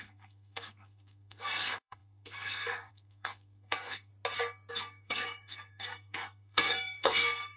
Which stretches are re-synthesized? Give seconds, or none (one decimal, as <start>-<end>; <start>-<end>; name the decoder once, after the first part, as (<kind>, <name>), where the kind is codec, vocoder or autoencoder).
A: 0.0-4.1 (codec, SNAC); 4.7-7.6

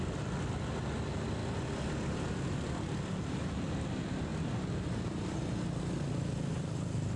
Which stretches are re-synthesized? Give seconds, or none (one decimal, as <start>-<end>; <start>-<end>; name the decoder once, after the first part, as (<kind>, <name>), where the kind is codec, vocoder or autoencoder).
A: none

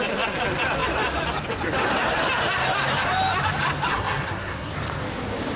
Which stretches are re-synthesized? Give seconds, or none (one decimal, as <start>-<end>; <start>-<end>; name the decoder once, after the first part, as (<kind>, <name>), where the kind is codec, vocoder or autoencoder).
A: 3.9-4.7 (codec, SNAC)

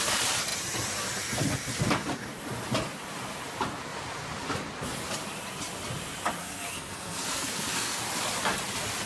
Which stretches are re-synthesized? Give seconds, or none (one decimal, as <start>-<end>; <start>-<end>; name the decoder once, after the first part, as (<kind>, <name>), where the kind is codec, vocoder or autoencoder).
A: 6.4-8.0 (codec, SNAC)